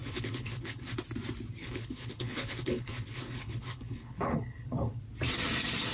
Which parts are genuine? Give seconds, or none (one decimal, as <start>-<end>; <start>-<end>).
0.9-1.6; 5.0-5.9